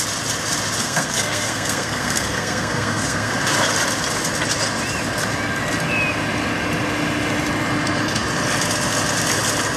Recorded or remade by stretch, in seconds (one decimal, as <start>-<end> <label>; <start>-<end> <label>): 0.0-0.8 recorded; 0.8-3.3 remade; 3.3-9.8 recorded